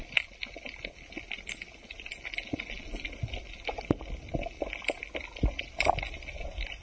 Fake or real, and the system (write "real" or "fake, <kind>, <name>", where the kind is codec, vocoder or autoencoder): real